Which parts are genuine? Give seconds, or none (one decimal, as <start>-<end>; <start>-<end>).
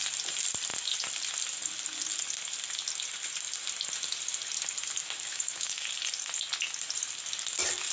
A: 0.0-5.3; 5.9-7.9